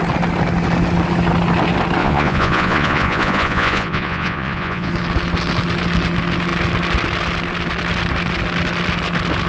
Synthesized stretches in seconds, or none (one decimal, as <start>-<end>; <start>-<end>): 2.0-4.9

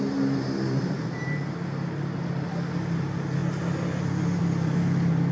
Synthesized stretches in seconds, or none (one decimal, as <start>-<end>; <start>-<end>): none

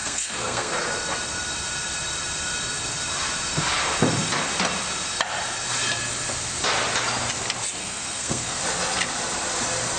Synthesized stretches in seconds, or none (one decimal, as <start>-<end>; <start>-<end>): 0.0-0.7; 7.8-8.6